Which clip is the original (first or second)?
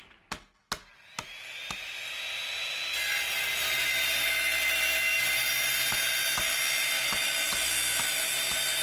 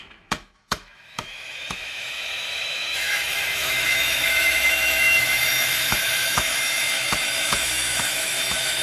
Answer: first